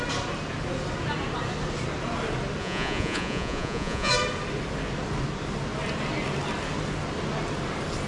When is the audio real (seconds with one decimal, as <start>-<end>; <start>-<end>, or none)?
0.0-2.6; 4.1-8.1